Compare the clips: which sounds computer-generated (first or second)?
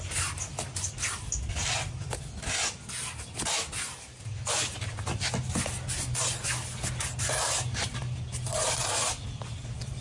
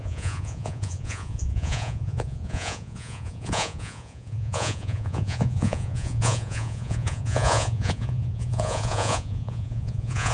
second